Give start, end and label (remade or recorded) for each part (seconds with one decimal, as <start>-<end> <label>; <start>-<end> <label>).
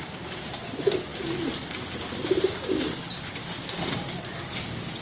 0.0-5.0 recorded